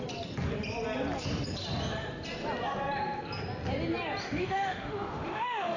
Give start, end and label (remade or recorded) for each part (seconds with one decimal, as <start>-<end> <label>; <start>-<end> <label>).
0.0-4.2 recorded; 4.2-5.8 remade

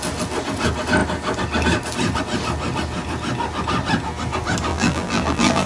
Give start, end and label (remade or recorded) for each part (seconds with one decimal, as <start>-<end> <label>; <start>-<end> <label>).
0.0-4.7 recorded; 4.7-5.7 remade

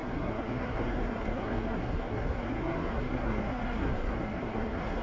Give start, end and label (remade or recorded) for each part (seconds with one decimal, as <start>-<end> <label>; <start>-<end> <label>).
0.0-5.0 remade

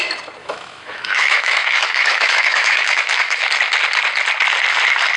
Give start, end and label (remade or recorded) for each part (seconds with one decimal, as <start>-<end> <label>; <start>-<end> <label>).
0.0-0.4 recorded; 0.4-3.5 remade; 3.5-5.2 recorded

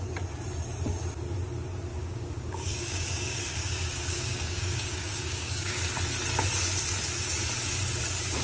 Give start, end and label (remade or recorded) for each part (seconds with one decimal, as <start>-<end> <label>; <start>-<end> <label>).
0.0-1.9 recorded; 1.9-5.8 remade; 5.8-8.4 recorded